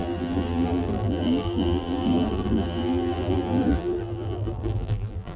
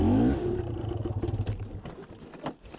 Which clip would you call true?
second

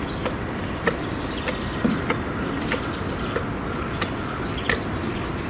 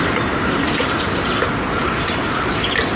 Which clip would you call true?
first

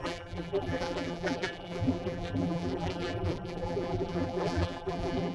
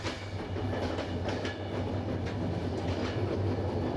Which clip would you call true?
second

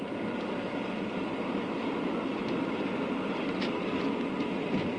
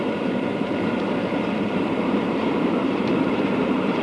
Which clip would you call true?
first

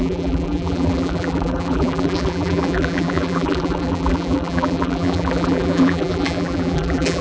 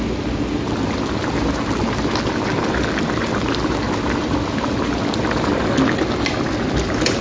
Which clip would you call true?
second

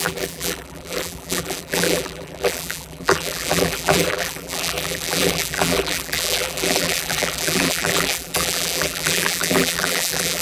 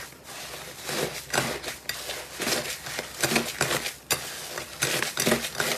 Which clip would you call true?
second